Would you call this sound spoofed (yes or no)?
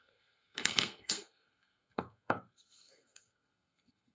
yes